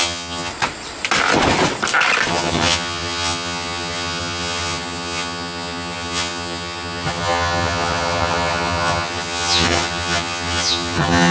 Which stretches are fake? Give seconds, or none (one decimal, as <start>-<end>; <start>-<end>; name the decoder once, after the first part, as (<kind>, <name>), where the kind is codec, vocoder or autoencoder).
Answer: 0.0-0.5 (vocoder, HiFi-GAN); 2.3-11.3